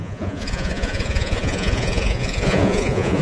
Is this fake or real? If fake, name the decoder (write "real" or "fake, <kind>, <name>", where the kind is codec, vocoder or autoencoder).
fake, vocoder, Vocos